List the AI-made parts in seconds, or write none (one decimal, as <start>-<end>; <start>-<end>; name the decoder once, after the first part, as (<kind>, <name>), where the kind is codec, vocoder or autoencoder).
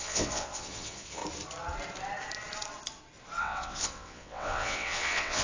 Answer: 0.0-1.2 (vocoder, WaveNeXt); 3.4-5.4